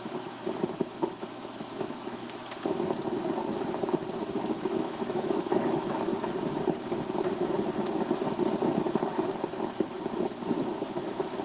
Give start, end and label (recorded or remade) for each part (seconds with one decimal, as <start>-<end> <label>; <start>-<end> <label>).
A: 0.0-2.2 remade; 2.2-4.4 recorded; 4.4-6.1 remade; 6.1-10.5 recorded; 10.5-11.4 remade